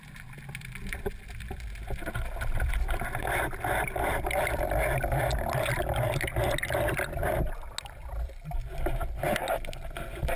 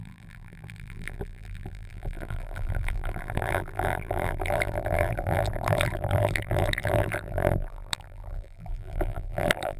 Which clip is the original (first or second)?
first